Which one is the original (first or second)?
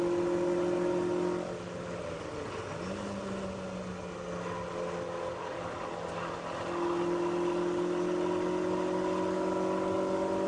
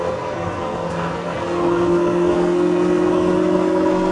first